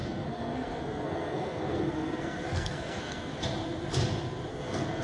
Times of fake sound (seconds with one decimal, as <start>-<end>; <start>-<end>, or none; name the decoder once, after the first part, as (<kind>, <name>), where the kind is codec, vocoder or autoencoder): 0.0-3.3 (codec, SNAC); 4.5-5.0

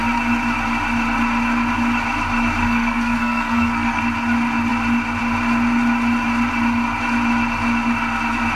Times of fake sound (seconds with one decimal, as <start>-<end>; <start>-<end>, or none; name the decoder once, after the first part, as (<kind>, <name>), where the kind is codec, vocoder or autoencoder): 2.6-4.0 (codec, SNAC)

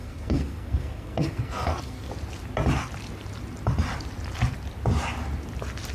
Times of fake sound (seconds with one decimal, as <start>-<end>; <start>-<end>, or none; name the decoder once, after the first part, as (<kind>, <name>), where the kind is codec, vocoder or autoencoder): 0.0-2.1 (codec, SNAC)

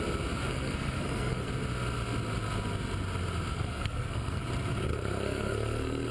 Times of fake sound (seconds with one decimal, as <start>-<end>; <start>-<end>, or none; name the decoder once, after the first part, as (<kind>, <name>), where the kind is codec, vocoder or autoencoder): 0.5-1.5 (codec, SNAC); 3.5-4.4; 4.9-6.1

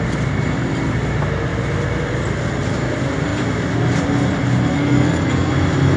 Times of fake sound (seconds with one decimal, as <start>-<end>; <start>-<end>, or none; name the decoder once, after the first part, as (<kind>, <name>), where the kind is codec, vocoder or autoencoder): 4.7-5.5 (codec, SNAC)

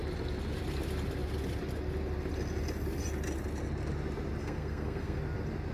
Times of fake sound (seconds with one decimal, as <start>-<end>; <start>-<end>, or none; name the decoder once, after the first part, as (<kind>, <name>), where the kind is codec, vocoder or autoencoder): 4.4-5.2 (codec, SNAC)